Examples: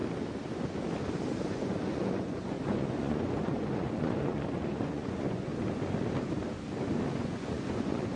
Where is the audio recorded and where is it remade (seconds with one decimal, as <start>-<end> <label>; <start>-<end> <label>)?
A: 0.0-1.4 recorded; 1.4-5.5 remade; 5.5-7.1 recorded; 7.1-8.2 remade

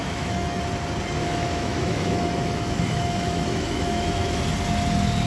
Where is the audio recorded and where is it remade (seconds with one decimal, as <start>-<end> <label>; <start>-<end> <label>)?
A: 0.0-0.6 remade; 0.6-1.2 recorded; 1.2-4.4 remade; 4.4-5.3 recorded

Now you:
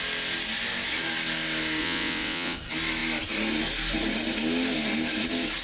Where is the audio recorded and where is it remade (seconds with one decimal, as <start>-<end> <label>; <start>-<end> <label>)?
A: 0.0-1.8 recorded; 1.8-2.6 remade; 2.6-5.6 recorded

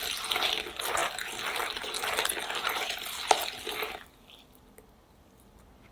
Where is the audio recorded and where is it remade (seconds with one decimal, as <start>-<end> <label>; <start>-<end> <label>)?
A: 0.0-5.9 recorded

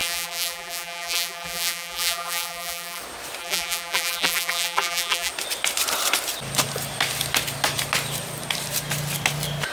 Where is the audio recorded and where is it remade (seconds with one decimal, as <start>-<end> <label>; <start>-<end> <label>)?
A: 0.0-3.0 remade; 3.0-3.4 recorded; 3.4-5.3 remade; 5.3-9.7 recorded

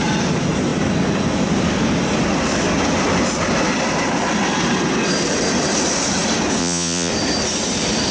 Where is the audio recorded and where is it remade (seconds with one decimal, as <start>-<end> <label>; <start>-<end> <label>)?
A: 0.0-6.6 recorded; 6.6-7.1 remade; 7.1-8.1 recorded

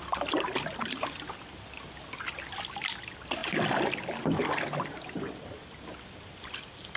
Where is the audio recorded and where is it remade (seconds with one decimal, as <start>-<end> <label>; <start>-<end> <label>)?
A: 0.0-7.0 recorded